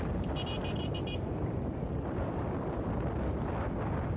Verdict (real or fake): fake